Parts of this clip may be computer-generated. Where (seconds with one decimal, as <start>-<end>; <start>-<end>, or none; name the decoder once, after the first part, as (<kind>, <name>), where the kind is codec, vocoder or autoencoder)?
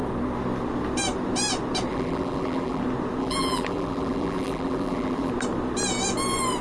1.9-2.8 (vocoder, BigVGAN v2); 3.2-5.3